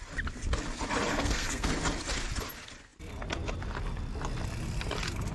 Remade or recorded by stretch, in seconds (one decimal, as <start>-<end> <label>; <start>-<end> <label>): 0.0-1.1 recorded; 1.1-1.7 remade; 1.7-5.3 recorded